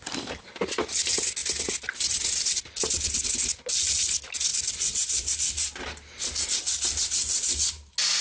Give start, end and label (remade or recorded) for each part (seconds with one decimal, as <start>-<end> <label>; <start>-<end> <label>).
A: 0.0-8.2 recorded